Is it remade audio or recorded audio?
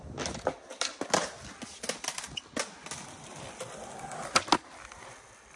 recorded